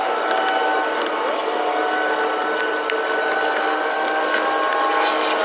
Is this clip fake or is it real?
real